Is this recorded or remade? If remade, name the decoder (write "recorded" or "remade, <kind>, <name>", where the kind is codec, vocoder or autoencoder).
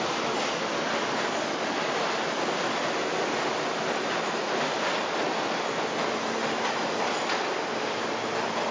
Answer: recorded